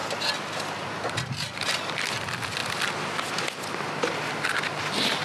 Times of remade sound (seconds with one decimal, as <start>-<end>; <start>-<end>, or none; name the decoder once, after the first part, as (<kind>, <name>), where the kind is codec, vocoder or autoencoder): none